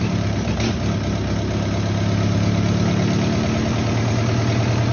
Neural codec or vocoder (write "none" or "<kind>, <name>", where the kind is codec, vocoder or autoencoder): none